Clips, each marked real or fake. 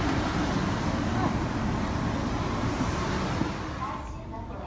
real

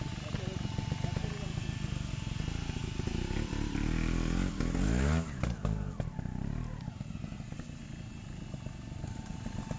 real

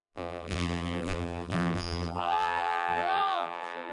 fake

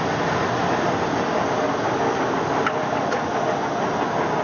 real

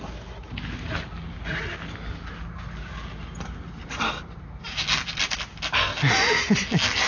real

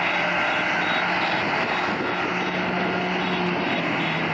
real